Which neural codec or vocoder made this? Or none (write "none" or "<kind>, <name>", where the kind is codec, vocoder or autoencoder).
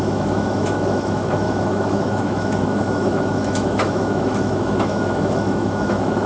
autoencoder, DAC-VAE